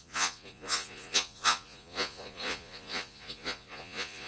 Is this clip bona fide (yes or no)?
no